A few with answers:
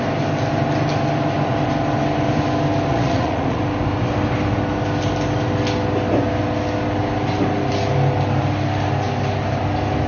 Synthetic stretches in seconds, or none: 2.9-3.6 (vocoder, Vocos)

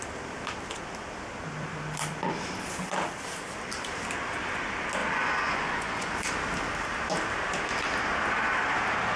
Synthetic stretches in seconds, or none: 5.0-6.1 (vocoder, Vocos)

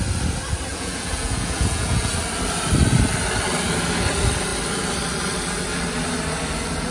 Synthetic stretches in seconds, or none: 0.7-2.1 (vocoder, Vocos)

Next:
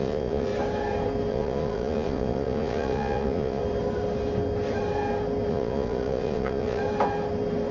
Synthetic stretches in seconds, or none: 0.0-0.5 (vocoder, Vocos); 1.3-3.6; 5.5-6.8

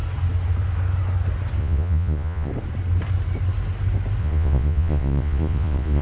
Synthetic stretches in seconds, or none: 1.6-2.5 (vocoder, Vocos); 4.2-6.0

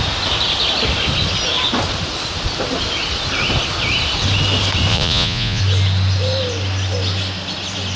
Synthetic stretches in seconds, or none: 4.9-5.6 (vocoder, Vocos)